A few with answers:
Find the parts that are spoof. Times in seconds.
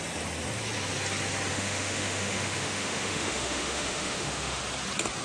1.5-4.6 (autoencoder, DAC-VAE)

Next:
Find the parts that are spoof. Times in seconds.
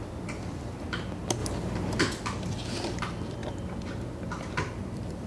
0.0-1.4 (vocoder, BigVGAN v2); 2.0-3.4; 4.7-5.3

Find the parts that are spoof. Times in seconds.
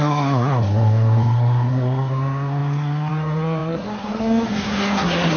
0.0-5.4 (codec, SNAC)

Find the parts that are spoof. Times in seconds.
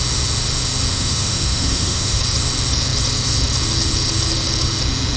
0.9-2.2 (autoencoder, DAC-VAE)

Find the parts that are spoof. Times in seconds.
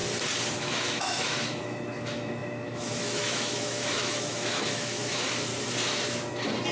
0.6-5.5 (autoencoder, DAC-VAE)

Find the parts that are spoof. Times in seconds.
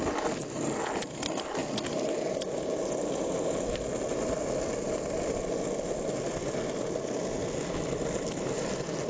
none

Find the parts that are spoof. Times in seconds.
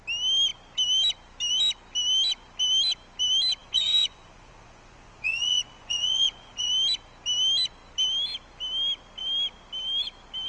3.6-6.7 (vocoder, Vocos)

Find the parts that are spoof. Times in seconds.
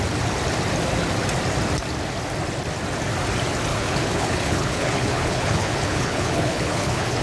3.7-7.2 (codec, HILCodec)